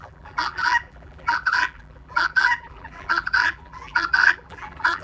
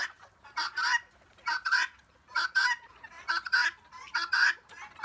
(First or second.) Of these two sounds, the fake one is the first